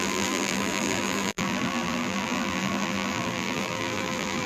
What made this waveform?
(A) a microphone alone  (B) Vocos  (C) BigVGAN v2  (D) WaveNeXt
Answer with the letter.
C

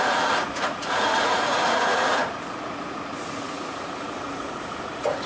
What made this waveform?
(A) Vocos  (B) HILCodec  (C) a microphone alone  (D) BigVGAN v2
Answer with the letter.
A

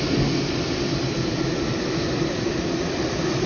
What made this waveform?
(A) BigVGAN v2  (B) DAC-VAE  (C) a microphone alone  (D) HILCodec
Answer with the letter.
C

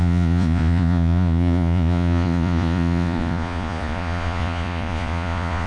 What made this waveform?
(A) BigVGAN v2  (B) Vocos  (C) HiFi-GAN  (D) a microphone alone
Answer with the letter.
B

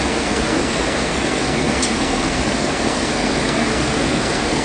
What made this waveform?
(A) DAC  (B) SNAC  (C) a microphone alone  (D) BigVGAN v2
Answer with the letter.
B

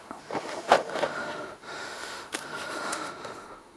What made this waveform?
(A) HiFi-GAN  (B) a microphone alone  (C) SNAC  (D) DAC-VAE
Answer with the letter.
D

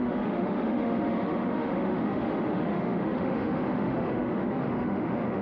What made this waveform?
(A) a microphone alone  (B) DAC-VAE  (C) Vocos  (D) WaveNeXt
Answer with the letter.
B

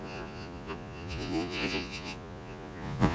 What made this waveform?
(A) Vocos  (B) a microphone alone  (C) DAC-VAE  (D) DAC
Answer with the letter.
A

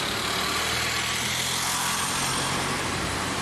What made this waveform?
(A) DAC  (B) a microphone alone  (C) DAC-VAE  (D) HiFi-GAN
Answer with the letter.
B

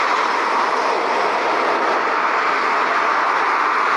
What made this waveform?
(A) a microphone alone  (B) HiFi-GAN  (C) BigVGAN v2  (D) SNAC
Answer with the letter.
A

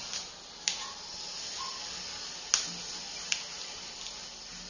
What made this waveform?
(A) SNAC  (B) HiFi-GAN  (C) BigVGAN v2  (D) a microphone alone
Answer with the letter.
D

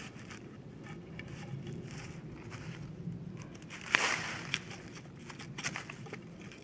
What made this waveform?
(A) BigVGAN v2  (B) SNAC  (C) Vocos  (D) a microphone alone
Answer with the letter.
D